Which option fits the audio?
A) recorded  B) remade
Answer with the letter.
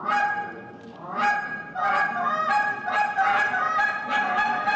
A